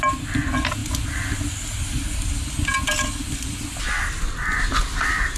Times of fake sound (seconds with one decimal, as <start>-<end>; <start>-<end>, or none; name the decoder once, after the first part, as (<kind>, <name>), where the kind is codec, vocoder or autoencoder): none